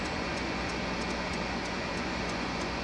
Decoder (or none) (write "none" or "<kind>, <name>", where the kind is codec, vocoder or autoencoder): vocoder, Vocos